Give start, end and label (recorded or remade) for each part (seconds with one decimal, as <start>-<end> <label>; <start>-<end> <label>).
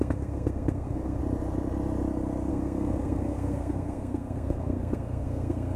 0.0-1.2 remade; 1.2-2.5 recorded; 2.5-5.8 remade